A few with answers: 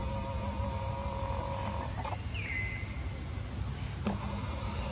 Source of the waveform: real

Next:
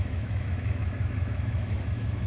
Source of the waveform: fake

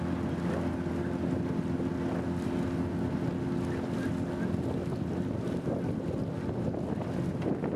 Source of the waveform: real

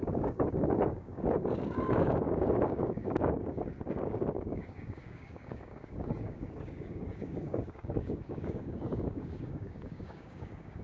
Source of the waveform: fake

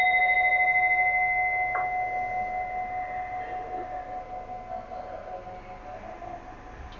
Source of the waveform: real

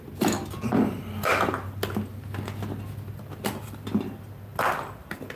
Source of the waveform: real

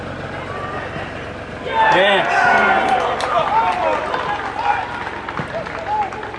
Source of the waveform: real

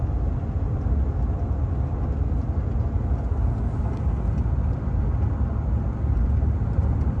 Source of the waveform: real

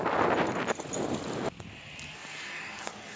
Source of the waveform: real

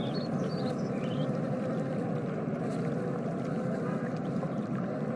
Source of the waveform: real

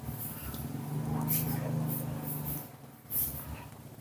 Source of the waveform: real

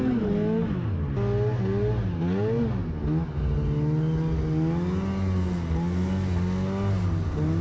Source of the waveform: real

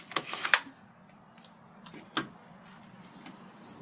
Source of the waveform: real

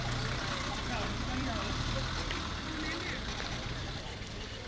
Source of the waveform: real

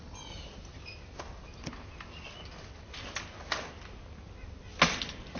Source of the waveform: real